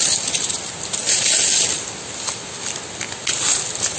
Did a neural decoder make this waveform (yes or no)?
no